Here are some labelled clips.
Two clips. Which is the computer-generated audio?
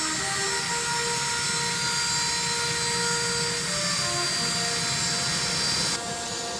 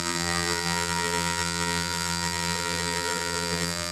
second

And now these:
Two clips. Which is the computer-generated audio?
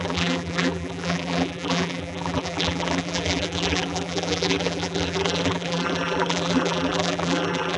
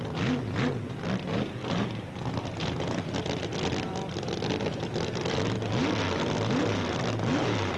first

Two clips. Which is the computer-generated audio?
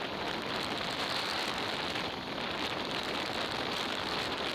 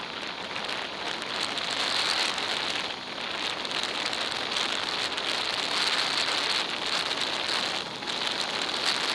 first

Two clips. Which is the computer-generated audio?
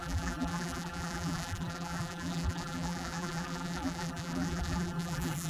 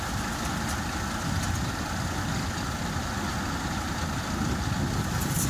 first